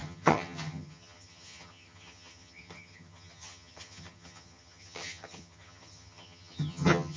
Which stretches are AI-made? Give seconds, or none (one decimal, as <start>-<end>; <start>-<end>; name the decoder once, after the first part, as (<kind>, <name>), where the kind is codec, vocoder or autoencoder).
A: 0.0-7.2 (vocoder, HiFi-GAN)